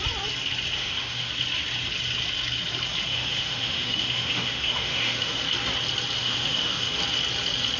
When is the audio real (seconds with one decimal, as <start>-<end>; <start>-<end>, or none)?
0.0-0.8; 1.3-3.1; 5.4-6.2; 6.9-7.8